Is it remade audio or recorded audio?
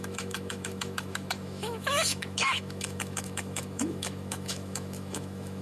remade